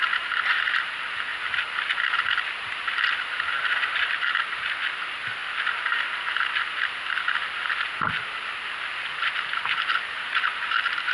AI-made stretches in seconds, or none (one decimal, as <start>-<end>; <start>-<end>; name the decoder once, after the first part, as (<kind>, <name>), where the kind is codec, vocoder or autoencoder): 0.0-1.3 (vocoder, BigVGAN v2); 3.9-5.4; 8.9-11.1